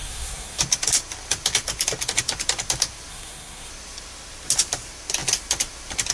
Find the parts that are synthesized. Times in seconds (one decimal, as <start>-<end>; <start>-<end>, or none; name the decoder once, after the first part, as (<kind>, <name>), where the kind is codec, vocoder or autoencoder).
0.0-0.6 (codec, SNAC); 3.1-3.7